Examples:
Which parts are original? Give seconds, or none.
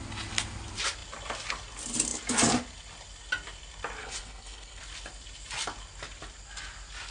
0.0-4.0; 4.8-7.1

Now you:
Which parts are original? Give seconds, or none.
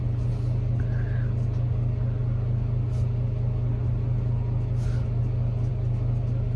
0.0-6.6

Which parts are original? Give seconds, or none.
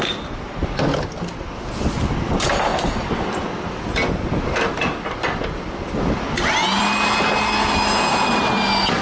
0.0-9.0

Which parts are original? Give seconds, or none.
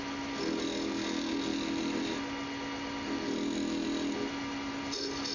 0.0-5.3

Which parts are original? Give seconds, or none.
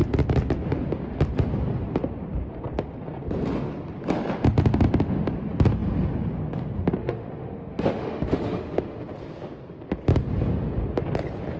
0.0-7.0; 9.0-11.6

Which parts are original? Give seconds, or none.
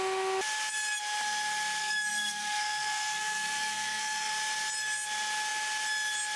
0.0-1.8; 4.3-6.4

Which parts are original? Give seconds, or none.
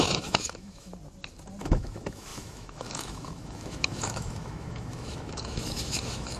0.9-1.6